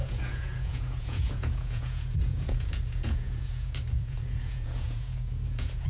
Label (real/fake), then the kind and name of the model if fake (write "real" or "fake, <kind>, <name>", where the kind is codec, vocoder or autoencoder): fake, vocoder, Vocos